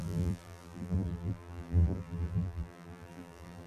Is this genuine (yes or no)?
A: no